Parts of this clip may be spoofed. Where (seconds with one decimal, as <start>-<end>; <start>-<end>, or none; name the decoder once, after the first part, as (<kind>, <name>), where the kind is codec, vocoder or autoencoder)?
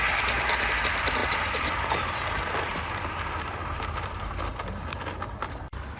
1.2-1.7 (vocoder, BigVGAN v2); 2.7-4.4